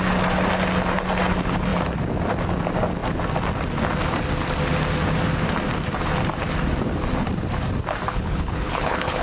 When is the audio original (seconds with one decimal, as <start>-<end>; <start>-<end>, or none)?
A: 0.0-8.0